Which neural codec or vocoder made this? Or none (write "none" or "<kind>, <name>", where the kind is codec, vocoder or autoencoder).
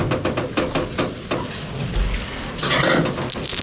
none